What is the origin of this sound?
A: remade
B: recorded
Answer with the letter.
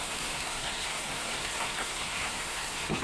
A